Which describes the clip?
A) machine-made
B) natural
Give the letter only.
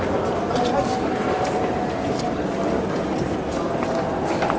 B